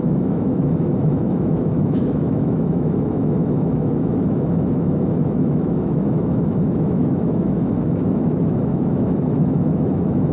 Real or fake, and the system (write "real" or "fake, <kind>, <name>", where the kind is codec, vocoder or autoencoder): fake, autoencoder, DAC-VAE